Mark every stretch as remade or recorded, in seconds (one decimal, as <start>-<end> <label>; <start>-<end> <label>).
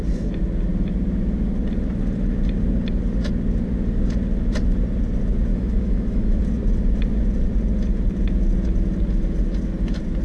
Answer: 0.0-5.5 recorded; 5.5-6.4 remade; 6.4-10.2 recorded